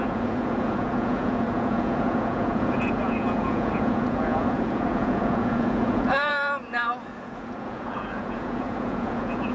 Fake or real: fake